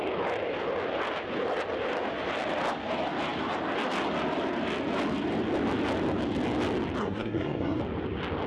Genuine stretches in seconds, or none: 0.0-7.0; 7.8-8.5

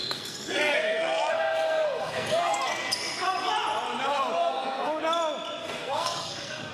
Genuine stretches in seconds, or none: 3.5-4.4; 5.0-5.6